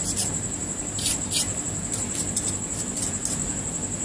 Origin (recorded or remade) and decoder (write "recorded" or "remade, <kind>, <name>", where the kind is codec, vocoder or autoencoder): remade, vocoder, BigVGAN v2